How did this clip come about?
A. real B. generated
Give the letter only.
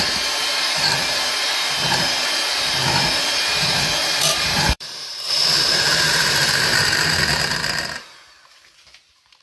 B